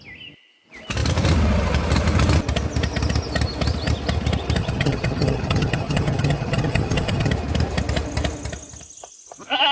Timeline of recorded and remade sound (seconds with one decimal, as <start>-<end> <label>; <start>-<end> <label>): 0.0-4.6 recorded; 4.6-7.3 remade; 7.3-9.7 recorded